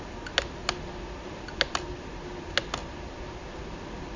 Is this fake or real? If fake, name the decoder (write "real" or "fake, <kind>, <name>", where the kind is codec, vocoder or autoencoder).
real